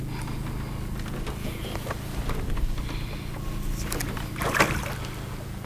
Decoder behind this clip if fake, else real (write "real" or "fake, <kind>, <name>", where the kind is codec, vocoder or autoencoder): real